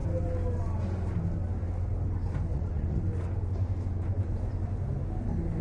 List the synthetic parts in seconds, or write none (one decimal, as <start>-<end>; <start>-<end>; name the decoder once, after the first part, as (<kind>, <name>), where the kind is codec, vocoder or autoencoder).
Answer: 2.5-3.0 (vocoder, WaveNeXt)